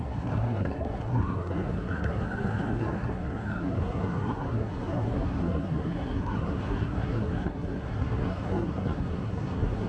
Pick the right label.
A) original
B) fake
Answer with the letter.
B